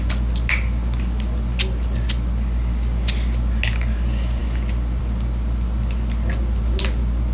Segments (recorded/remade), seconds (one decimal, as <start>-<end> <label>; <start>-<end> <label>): 0.0-7.3 recorded